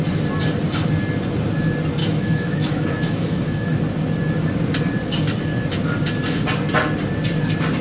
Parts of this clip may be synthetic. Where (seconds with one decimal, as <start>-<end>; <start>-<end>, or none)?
2.0-3.7